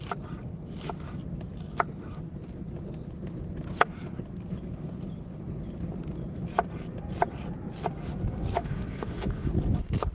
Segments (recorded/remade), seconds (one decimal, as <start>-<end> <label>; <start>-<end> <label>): 0.0-8.6 recorded; 8.6-9.5 remade; 9.5-10.1 recorded